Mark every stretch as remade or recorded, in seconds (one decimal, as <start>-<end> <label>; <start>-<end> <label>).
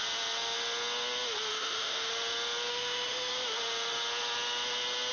0.0-1.5 recorded; 1.5-2.1 remade; 2.1-2.7 recorded; 2.7-3.3 remade; 3.3-5.1 recorded